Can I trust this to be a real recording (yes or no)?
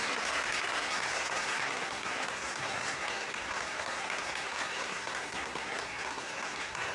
no